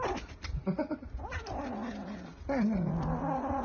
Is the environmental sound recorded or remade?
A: recorded